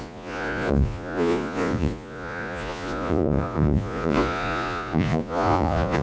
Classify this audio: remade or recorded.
remade